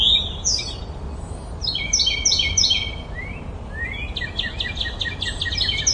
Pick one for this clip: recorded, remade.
recorded